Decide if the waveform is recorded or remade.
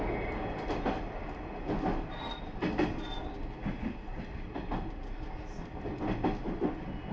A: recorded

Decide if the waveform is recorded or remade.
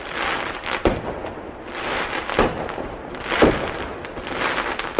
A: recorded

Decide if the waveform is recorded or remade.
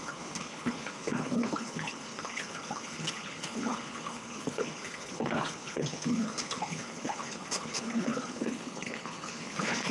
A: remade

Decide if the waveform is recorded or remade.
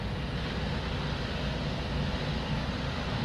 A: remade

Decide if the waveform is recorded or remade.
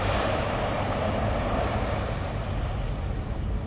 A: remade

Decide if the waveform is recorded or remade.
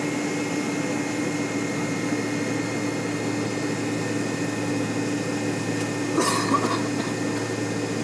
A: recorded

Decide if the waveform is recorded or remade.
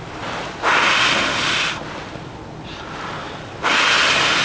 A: recorded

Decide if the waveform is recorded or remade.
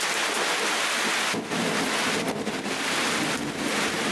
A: recorded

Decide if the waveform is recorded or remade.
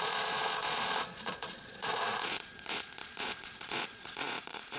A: remade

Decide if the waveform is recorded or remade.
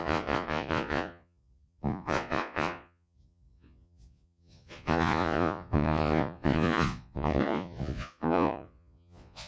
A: remade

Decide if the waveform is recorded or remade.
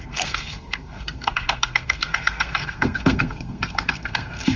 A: remade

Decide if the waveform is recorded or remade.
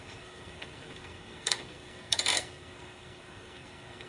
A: remade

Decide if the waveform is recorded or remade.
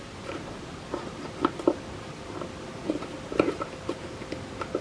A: recorded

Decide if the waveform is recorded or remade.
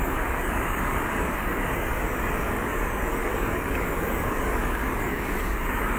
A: remade